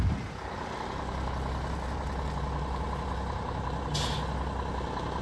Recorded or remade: recorded